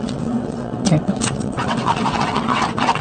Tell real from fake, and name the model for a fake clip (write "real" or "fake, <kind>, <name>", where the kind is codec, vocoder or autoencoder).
fake, vocoder, WaveNeXt